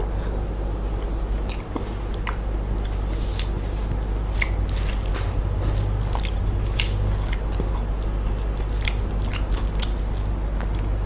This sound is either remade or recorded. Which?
recorded